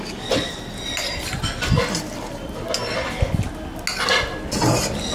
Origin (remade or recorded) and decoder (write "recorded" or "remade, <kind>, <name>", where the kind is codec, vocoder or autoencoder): recorded